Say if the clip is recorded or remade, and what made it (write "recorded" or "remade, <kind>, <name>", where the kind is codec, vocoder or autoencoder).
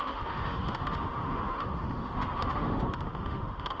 remade, autoencoder, DAC-VAE